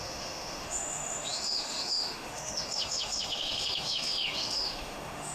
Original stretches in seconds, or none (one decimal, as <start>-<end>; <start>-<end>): none